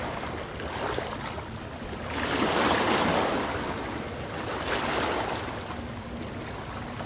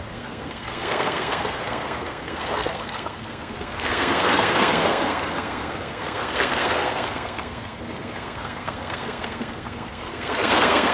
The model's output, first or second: second